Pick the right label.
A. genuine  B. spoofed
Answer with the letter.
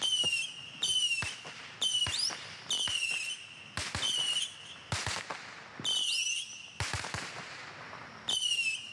A